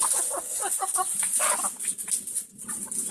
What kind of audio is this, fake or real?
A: real